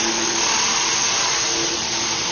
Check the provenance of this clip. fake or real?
real